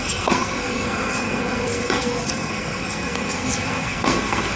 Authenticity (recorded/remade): remade